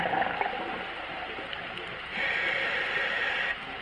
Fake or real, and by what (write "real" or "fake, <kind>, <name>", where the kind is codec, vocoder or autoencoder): real